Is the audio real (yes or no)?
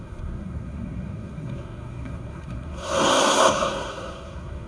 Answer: no